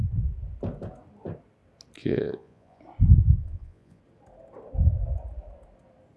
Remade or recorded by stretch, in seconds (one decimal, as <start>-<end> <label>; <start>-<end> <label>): 0.0-2.0 recorded; 2.0-2.8 remade; 2.8-3.4 recorded; 3.4-4.0 remade; 4.0-6.2 recorded